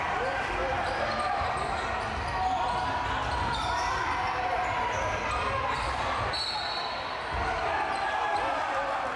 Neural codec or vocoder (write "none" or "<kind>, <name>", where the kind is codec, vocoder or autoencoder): none